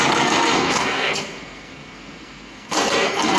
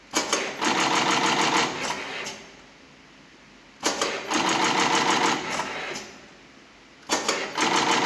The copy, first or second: first